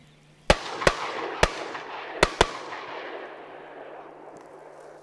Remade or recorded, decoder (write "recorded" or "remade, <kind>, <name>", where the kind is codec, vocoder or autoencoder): recorded